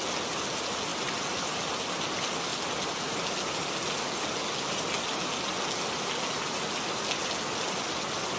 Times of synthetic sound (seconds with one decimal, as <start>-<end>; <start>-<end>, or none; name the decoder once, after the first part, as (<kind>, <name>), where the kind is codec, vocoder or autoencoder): none